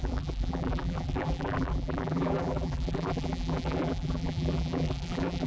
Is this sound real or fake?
fake